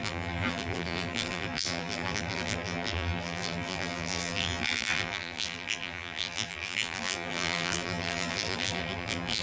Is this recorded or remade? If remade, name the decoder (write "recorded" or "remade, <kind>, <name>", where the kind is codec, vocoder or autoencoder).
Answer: remade, vocoder, BigVGAN v2